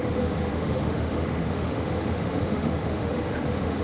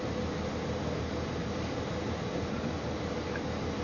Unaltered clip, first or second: second